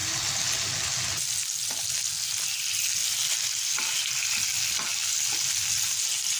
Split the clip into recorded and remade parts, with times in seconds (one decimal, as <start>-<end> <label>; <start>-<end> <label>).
0.0-3.2 recorded; 3.2-3.8 remade; 3.8-6.4 recorded